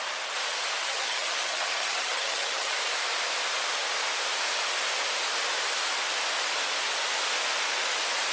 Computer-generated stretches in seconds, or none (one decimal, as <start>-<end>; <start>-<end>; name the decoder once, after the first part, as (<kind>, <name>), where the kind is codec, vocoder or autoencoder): 0.8-2.7 (vocoder, HiFi-GAN)